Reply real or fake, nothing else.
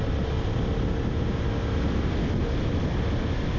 real